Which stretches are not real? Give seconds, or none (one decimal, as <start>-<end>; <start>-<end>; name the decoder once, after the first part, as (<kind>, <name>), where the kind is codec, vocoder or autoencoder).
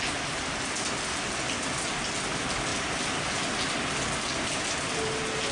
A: none